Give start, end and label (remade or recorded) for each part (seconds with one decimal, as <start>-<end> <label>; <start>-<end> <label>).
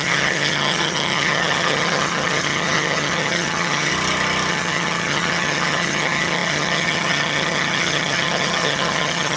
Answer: 0.0-3.9 remade; 3.9-4.5 recorded; 4.5-9.4 remade